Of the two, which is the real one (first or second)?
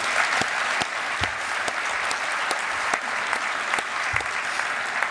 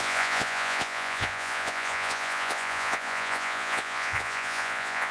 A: first